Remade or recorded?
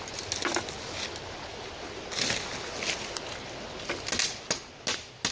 recorded